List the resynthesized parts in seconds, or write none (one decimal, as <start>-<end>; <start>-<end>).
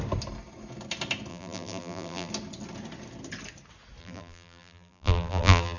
1.3-2.3; 4.0-5.8